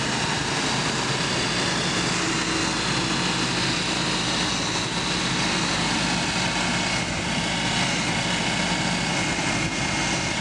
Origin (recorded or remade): recorded